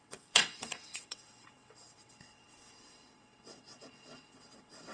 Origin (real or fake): fake